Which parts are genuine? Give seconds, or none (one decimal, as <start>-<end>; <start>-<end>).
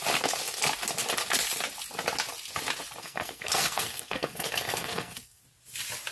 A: 0.0-3.0; 5.4-6.1